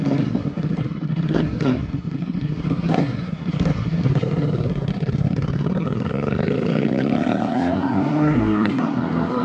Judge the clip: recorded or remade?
remade